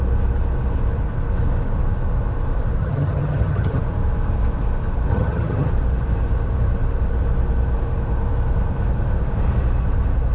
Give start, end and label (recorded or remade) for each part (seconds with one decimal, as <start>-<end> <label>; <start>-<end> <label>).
0.0-2.8 recorded; 2.8-3.8 remade; 3.8-5.1 recorded; 5.1-5.7 remade; 5.7-10.3 recorded

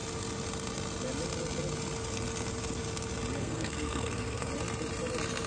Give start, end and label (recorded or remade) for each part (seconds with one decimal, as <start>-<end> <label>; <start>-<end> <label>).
0.0-3.4 recorded; 3.4-4.5 remade; 4.5-5.5 recorded

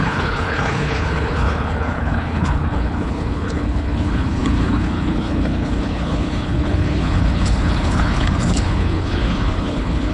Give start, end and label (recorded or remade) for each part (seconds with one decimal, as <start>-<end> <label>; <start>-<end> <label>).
0.0-10.1 remade

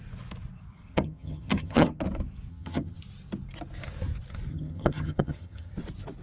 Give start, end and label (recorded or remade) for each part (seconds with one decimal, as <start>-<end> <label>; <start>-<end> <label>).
0.0-0.9 recorded; 0.9-2.0 remade; 2.0-2.5 recorded; 2.5-3.0 remade; 3.0-4.5 recorded; 4.5-5.7 remade; 5.7-6.2 recorded

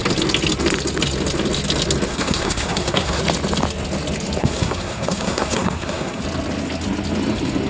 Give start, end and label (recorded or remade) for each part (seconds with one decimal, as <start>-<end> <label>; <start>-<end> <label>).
0.0-2.1 recorded; 2.1-3.2 remade; 3.2-4.4 recorded; 4.4-6.2 remade; 6.2-7.7 recorded

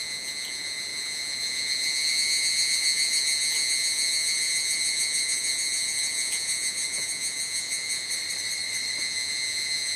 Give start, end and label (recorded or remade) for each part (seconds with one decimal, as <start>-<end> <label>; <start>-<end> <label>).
0.0-8.1 remade; 8.1-9.0 recorded; 9.0-10.0 remade

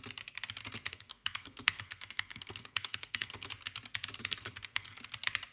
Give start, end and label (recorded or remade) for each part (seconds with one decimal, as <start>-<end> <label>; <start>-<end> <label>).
0.0-0.9 recorded; 0.9-3.5 remade; 3.5-4.2 recorded; 4.2-5.0 remade; 5.0-5.5 recorded